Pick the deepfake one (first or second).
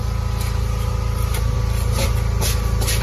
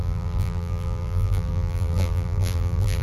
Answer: second